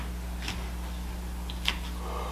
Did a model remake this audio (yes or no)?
no